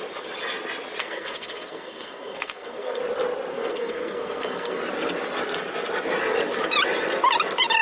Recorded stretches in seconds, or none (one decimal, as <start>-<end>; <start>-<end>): 0.0-1.0; 3.0-3.5; 4.8-7.8

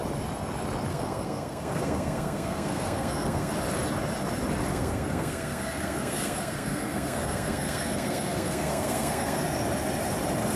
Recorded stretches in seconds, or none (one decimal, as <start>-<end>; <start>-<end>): 0.0-0.9; 3.5-4.7; 9.4-10.6

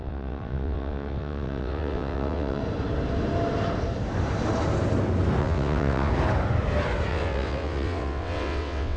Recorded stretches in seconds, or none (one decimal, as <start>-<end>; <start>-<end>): 2.6-5.4; 6.1-7.1

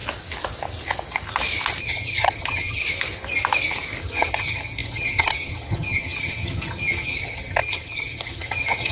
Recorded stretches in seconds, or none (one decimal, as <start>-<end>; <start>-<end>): 0.0-1.8; 2.8-4.0

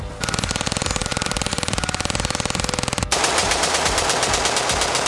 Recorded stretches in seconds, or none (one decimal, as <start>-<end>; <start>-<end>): 0.0-1.0; 1.6-3.4; 3.9-5.1

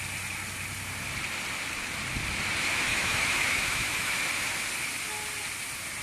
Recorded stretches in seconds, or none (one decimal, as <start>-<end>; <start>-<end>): 0.0-2.9; 4.2-6.0